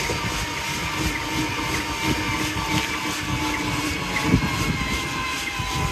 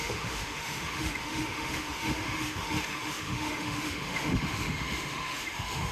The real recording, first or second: first